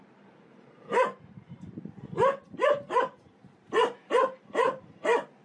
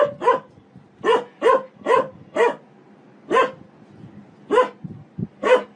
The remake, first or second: first